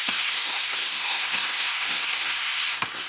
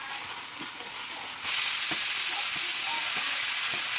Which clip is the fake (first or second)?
first